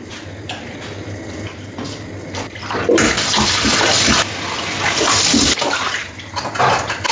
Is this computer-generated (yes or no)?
no